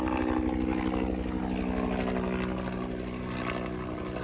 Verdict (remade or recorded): recorded